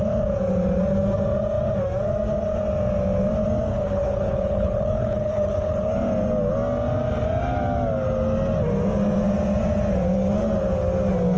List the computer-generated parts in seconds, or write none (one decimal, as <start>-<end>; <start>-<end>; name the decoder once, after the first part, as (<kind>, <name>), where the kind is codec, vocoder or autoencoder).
3.7-5.9 (codec, HILCodec)